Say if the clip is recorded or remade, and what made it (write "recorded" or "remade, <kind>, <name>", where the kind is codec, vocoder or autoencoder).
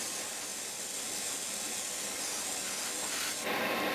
recorded